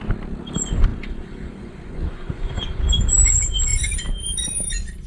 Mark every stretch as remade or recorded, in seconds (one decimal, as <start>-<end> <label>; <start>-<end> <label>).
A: 0.0-0.9 recorded; 0.9-2.8 remade; 2.8-5.1 recorded